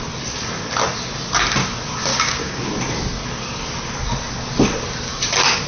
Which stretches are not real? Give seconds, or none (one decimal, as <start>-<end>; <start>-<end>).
2.1-2.6